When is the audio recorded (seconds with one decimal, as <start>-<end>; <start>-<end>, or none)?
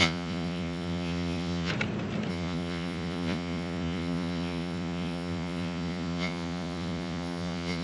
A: 1.7-2.3